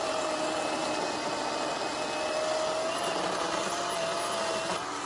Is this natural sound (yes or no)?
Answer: yes